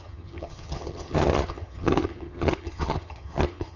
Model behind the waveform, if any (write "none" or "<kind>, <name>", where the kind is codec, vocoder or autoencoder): vocoder, HiFi-GAN